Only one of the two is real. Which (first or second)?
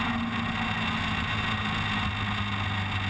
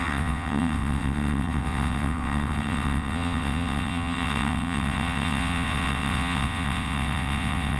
first